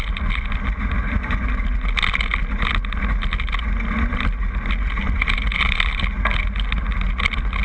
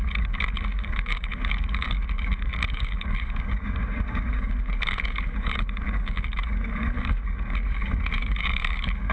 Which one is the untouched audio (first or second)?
first